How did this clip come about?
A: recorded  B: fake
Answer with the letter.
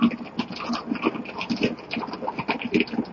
A